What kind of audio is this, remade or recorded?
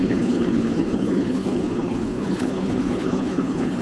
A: remade